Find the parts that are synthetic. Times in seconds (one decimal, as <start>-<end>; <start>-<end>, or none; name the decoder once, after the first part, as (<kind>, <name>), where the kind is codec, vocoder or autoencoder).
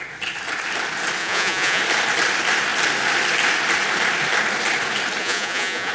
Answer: 1.2-1.8 (vocoder, Vocos); 5.2-5.9